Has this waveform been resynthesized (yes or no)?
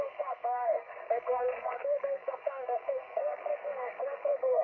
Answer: yes